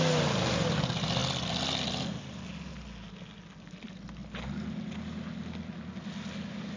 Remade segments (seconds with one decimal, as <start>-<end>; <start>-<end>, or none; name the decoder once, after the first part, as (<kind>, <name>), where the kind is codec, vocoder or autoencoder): none